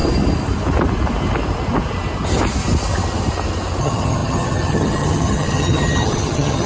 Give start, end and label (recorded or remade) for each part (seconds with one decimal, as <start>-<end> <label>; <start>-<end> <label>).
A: 0.0-3.8 recorded; 3.8-6.7 remade